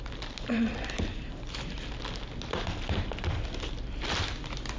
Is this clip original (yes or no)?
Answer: yes